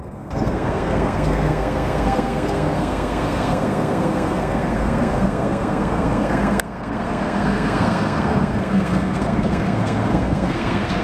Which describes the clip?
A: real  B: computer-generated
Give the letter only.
B